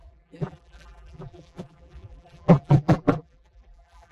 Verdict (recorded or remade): remade